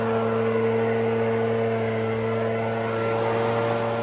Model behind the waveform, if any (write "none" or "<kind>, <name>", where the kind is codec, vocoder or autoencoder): none